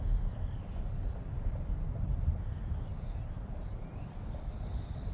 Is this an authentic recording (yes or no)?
yes